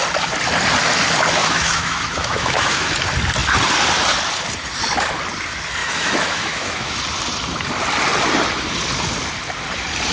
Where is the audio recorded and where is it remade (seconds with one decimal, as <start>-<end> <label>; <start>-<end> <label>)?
0.0-1.4 recorded; 1.4-2.9 remade; 2.9-5.8 recorded; 5.8-7.0 remade; 7.0-10.1 recorded